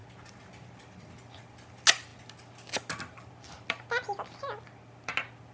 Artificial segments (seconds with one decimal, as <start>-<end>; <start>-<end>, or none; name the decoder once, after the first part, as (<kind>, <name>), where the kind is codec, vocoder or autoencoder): none

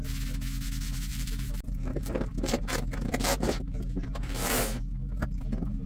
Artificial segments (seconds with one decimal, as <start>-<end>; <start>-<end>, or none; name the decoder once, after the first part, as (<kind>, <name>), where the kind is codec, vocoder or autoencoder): 1.1-4.6 (vocoder, BigVGAN v2); 5.0-5.9

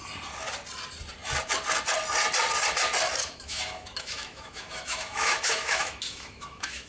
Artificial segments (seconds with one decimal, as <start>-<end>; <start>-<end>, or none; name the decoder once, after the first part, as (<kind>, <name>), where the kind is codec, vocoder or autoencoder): 3.2-6.9 (autoencoder, DAC-VAE)

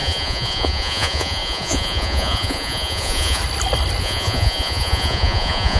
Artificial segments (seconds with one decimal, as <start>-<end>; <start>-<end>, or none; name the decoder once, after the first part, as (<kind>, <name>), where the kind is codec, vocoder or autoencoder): 0.0-3.4 (vocoder, Vocos); 4.0-5.8

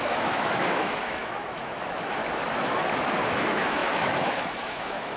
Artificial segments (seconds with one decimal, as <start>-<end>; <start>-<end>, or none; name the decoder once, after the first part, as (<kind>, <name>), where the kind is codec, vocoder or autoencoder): 0.0-2.2 (autoencoder, DAC-VAE); 3.2-5.2

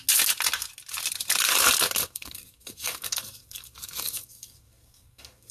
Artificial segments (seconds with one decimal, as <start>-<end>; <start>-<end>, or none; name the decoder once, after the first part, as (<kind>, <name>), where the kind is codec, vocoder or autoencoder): 2.0-5.5 (codec, SNAC)